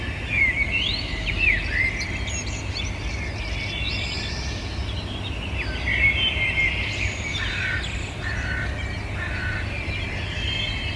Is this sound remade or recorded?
recorded